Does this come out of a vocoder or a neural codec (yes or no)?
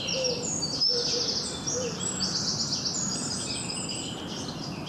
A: no